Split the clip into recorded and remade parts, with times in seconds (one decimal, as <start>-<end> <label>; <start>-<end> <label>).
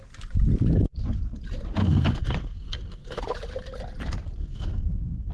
0.0-1.8 recorded; 1.8-3.2 remade; 3.2-4.4 recorded; 4.4-5.3 remade